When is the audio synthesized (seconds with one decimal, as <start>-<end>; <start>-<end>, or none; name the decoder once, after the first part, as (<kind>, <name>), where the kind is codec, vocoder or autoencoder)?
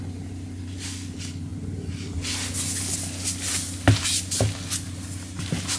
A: none